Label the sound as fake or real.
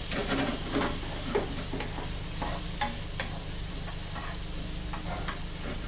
real